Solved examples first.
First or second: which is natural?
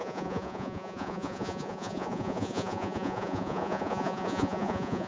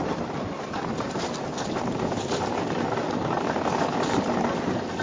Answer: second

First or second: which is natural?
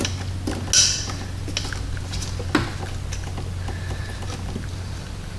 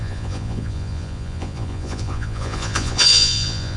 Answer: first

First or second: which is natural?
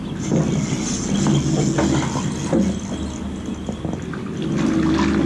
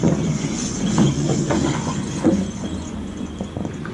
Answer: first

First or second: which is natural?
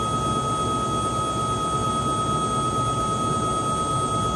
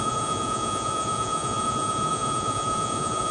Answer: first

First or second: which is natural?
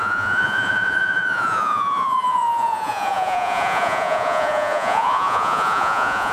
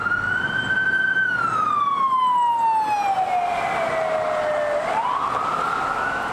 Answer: second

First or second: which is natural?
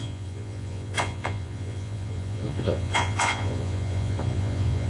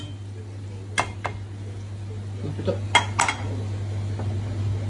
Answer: second